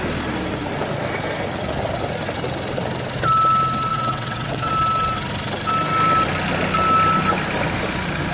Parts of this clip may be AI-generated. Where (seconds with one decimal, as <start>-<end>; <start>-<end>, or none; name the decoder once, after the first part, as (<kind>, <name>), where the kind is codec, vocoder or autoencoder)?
3.9-4.7 (vocoder, WaveNeXt)